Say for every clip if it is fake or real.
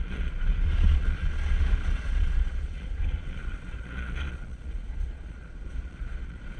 fake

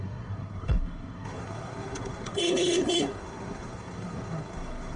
fake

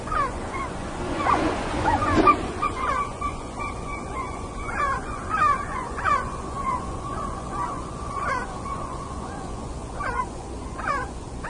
fake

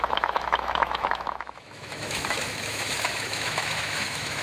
fake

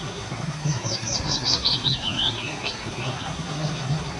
fake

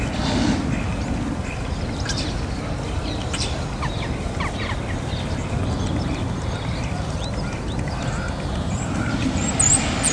real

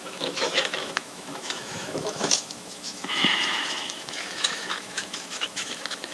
fake